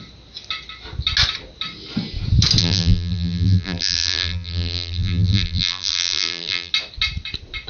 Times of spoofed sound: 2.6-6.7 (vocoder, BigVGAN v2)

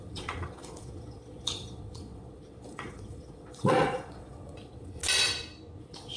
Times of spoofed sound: 0.0-5.0 (vocoder, Vocos); 5.8-6.2

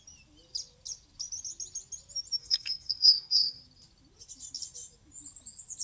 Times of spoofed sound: 2.4-3.6 (codec, SNAC)

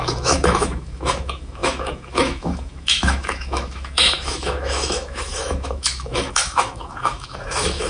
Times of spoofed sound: 0.0-7.9 (autoencoder, DAC-VAE)

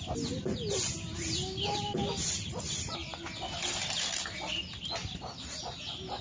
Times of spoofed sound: 5.0-5.8 (vocoder, BigVGAN v2)

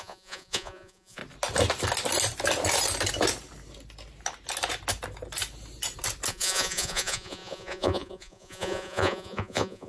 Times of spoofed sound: 0.0-1.2 (vocoder, Vocos); 6.3-9.9

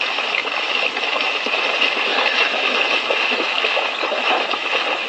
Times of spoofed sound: 0.0-5.1 (autoencoder, DAC-VAE)

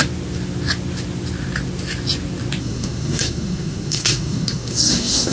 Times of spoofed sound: 2.6-5.3 (codec, SNAC)